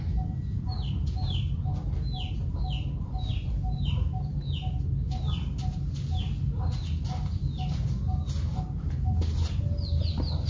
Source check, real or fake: real